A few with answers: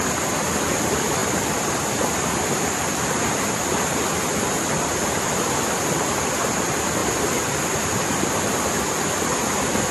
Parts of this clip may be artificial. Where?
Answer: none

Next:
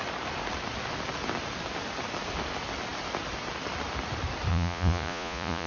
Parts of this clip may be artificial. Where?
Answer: 4.5-5.7 (vocoder, Vocos)

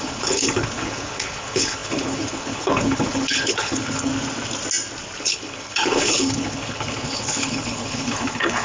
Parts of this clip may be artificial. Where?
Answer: 0.0-4.1 (codec, HILCodec); 5.2-8.6